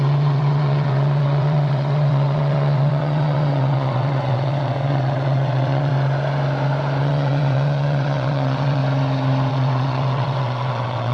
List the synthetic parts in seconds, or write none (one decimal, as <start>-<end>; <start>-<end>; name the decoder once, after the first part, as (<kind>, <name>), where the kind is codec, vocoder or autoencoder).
0.0-5.9 (vocoder, WaveNeXt); 7.0-8.8; 9.5-11.1